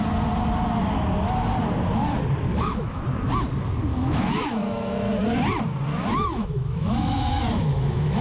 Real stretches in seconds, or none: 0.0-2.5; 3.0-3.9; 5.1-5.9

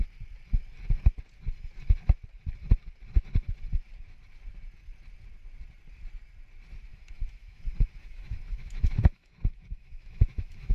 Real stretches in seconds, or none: 0.0-6.9; 7.6-8.0

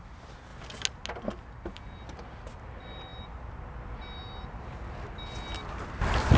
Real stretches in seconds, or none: 0.0-6.4

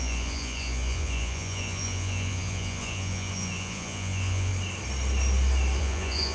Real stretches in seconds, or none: 4.5-5.8

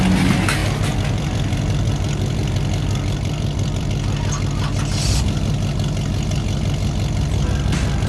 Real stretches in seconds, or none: 0.0-0.6; 3.9-8.1

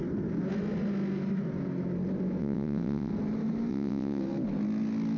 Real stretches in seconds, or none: 0.0-2.4; 3.1-3.7; 4.2-5.2